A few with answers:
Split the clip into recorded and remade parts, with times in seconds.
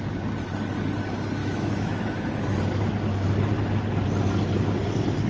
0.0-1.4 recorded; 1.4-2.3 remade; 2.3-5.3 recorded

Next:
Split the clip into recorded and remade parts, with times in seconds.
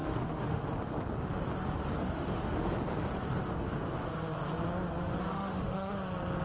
0.0-0.6 remade; 0.6-2.0 recorded; 2.0-2.7 remade; 2.7-5.3 recorded; 5.3-5.9 remade; 5.9-6.4 recorded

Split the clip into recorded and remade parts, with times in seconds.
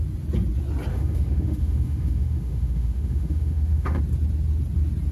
0.0-0.9 recorded; 0.9-4.0 remade; 4.0-5.1 recorded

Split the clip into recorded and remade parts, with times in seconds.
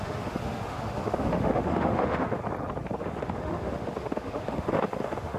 0.0-2.4 remade; 2.4-3.0 recorded; 3.0-5.4 remade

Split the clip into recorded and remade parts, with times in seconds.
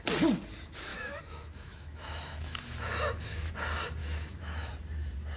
0.0-0.9 recorded; 0.9-3.5 remade; 3.5-4.0 recorded; 4.0-4.7 remade; 4.7-5.4 recorded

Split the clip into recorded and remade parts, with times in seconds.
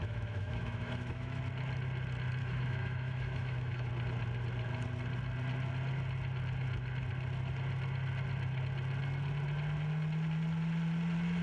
0.0-1.4 remade; 1.4-2.4 recorded; 2.4-3.9 remade; 3.9-11.4 recorded